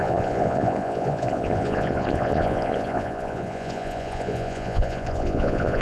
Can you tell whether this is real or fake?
fake